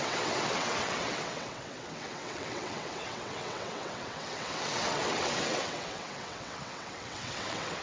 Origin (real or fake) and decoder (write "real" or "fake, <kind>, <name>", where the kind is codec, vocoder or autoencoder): fake, vocoder, WaveNeXt